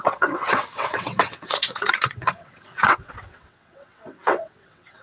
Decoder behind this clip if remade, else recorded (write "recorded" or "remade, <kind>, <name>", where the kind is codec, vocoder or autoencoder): remade, vocoder, WaveNeXt